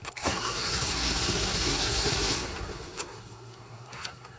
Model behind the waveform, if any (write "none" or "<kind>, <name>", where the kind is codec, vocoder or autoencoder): codec, SNAC